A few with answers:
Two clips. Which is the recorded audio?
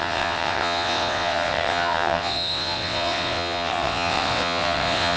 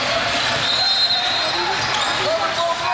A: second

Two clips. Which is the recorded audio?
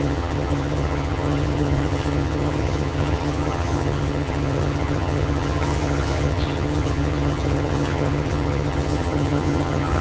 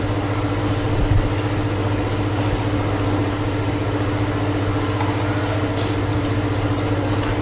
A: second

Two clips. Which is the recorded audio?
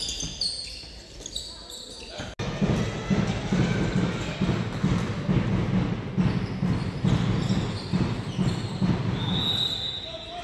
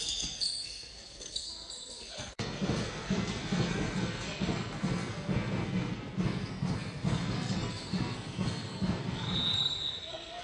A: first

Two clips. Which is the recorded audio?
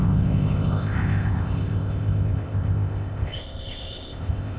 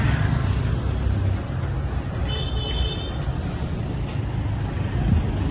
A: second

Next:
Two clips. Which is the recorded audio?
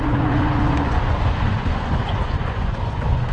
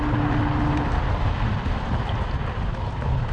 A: second